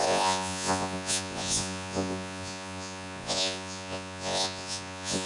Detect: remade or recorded remade